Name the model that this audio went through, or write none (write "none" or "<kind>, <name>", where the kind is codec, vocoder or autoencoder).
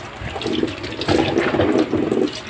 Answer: none